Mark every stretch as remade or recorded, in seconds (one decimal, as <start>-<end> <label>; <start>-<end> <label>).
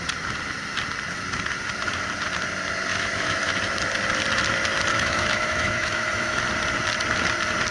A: 0.0-2.9 recorded; 2.9-3.6 remade; 3.6-4.9 recorded; 4.9-6.4 remade; 6.4-7.7 recorded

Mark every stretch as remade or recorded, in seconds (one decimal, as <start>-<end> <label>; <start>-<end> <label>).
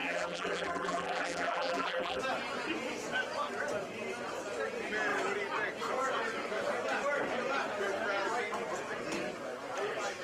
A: 0.0-2.2 remade; 2.2-10.2 recorded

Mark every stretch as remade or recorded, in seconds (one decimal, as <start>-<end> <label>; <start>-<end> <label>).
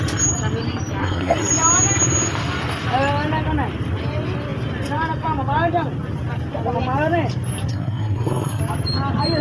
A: 0.0-1.0 recorded; 1.0-1.5 remade; 1.5-7.7 recorded; 7.7-8.6 remade; 8.6-9.4 recorded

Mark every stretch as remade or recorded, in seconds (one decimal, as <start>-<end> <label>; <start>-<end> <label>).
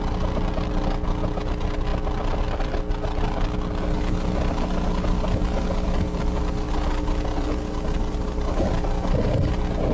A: 0.0-9.9 recorded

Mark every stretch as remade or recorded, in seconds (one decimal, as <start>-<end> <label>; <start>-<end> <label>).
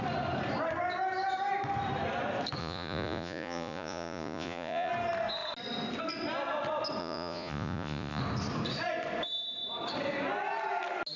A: 0.0-2.6 recorded; 2.6-4.9 remade; 4.9-7.0 recorded; 7.0-8.2 remade; 8.2-11.2 recorded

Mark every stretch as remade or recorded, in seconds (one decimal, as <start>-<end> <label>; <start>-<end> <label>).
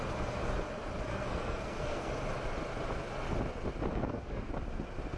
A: 0.0-1.1 recorded; 1.1-2.1 remade; 2.1-3.9 recorded; 3.9-4.5 remade; 4.5-5.2 recorded